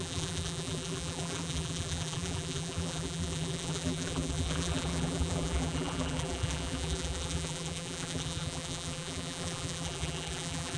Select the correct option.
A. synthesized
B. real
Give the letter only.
A